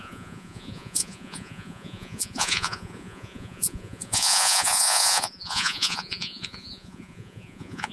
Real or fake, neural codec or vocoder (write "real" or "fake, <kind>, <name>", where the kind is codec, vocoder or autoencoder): fake, vocoder, Vocos